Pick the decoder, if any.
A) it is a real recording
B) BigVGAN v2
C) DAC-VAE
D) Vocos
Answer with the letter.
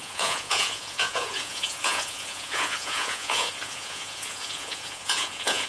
D